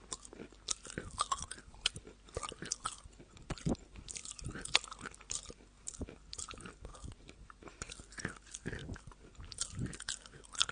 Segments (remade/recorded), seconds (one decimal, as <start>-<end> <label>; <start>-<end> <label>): 0.0-6.9 recorded; 6.9-7.7 remade; 7.7-10.7 recorded